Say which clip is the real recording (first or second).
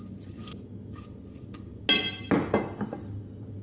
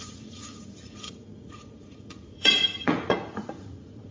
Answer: first